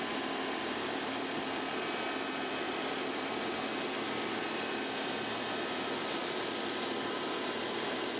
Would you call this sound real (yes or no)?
yes